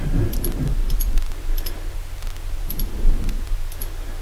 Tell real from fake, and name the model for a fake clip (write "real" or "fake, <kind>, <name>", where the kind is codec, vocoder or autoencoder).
real